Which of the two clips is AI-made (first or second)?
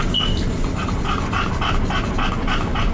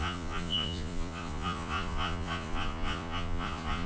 second